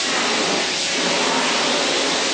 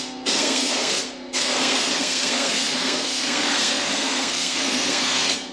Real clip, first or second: first